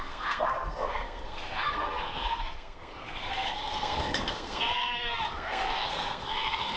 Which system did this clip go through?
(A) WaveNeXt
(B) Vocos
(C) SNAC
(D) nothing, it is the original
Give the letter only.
C